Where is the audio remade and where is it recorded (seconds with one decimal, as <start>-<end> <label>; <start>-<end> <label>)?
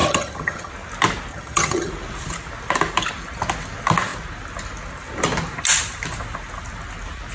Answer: 0.0-0.7 remade; 0.7-1.3 recorded; 1.3-1.9 remade; 1.9-7.3 recorded